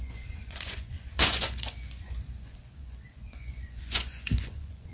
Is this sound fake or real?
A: fake